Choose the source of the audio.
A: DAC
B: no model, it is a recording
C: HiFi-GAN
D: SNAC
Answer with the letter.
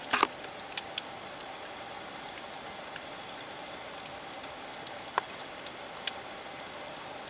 B